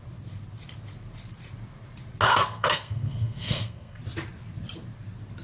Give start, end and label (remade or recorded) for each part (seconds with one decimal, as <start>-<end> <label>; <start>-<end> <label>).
0.0-2.3 recorded; 2.3-4.0 remade; 4.0-5.4 recorded